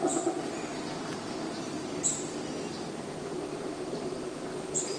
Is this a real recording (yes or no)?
yes